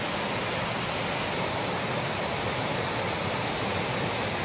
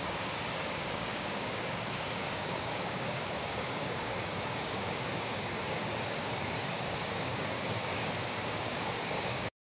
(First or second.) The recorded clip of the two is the first